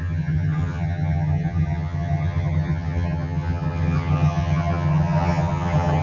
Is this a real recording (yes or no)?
no